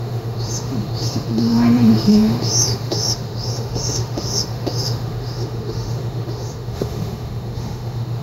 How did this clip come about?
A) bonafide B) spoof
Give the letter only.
B